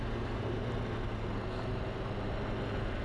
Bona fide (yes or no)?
yes